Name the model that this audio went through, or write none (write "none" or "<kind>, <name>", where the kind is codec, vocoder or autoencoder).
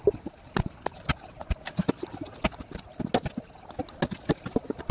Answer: none